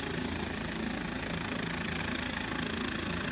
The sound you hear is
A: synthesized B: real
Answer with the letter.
B